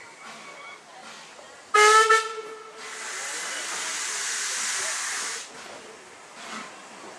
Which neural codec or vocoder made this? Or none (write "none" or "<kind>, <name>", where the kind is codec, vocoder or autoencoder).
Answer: none